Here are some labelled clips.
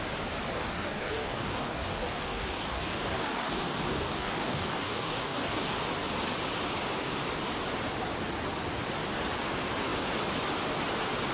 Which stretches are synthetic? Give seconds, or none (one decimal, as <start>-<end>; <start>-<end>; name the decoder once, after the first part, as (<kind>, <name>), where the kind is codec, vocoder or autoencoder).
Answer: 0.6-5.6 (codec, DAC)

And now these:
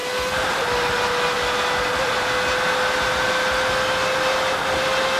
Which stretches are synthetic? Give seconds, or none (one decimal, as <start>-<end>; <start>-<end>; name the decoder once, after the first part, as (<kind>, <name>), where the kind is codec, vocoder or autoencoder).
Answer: none

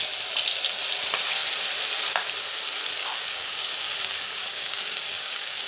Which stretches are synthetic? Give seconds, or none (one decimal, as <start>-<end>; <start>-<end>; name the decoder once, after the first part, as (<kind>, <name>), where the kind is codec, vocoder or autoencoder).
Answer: 3.0-5.7 (codec, DAC)

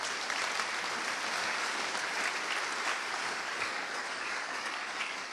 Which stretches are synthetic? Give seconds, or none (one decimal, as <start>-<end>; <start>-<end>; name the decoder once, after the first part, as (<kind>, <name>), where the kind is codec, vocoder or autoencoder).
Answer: 1.4-2.1 (codec, DAC); 2.9-5.3